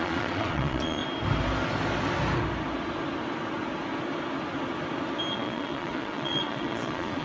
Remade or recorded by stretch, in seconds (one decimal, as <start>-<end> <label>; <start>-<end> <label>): 0.0-1.0 remade; 1.0-5.3 recorded; 5.3-7.2 remade